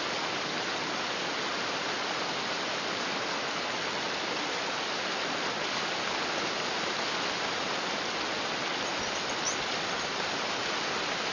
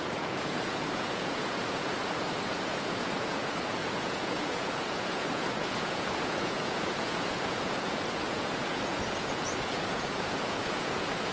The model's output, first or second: second